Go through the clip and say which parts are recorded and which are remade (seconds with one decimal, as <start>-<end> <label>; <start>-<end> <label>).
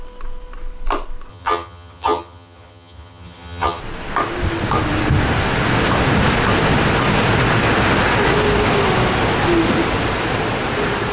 0.0-1.3 recorded; 1.3-3.8 remade; 3.8-11.1 recorded